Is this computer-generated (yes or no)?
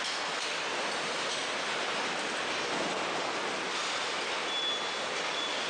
no